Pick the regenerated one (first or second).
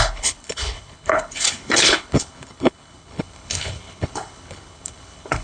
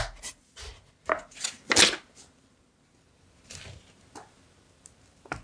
first